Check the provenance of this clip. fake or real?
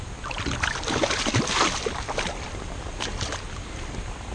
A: real